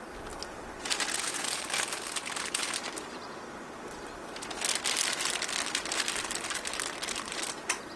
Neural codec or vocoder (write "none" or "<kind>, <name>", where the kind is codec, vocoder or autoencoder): none